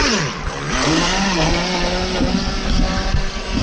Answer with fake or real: real